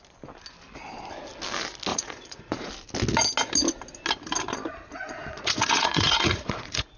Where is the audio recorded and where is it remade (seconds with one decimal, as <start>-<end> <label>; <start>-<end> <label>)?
0.0-1.9 recorded; 1.9-2.7 remade; 2.7-4.9 recorded; 4.9-7.0 remade